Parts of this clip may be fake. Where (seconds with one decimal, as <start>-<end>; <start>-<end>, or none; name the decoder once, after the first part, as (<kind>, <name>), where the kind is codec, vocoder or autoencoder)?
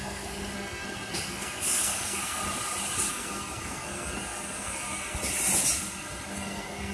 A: 0.0-2.4 (codec, SNAC); 3.1-5.2; 6.3-6.9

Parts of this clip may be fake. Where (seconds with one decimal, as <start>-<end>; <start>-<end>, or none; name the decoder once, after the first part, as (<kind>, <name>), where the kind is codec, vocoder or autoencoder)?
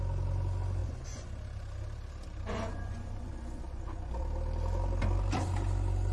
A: 0.8-1.3 (vocoder, Vocos); 2.5-4.2